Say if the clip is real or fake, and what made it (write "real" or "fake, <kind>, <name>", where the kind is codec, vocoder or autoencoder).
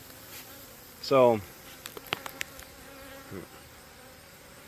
real